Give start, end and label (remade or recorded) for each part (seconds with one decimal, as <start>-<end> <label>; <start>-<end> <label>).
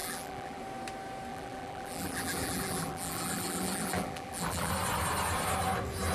0.0-0.6 remade; 0.6-1.3 recorded; 1.3-4.7 remade; 4.7-6.1 recorded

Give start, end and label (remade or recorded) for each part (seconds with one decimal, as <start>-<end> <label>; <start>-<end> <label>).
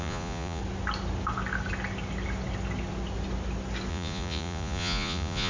0.0-0.6 remade; 0.6-3.9 recorded; 3.9-5.5 remade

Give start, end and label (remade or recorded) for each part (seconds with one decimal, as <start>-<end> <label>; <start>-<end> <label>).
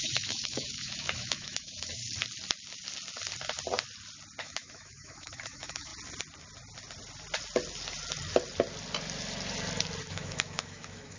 0.0-2.0 remade; 2.0-4.4 recorded; 4.4-5.9 remade; 5.9-10.0 recorded; 10.0-11.2 remade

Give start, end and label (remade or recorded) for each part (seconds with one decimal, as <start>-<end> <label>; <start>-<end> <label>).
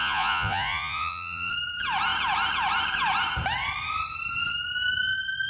0.0-1.5 remade; 1.5-5.5 recorded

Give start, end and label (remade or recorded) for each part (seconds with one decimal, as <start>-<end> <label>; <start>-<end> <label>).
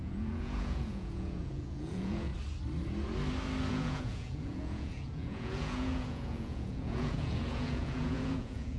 0.0-2.3 remade; 2.3-3.7 recorded; 3.7-8.8 remade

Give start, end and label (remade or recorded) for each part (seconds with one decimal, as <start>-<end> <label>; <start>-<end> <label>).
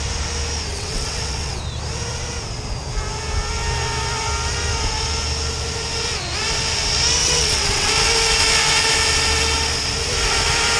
0.0-0.7 recorded; 0.7-1.6 remade; 1.6-7.2 recorded; 7.2-7.9 remade; 7.9-10.8 recorded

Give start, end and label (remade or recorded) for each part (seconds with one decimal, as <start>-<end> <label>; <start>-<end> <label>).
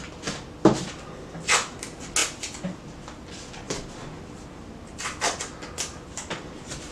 0.0-6.9 recorded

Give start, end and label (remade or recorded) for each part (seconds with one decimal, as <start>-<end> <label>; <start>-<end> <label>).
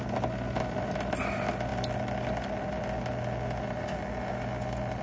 0.0-5.0 recorded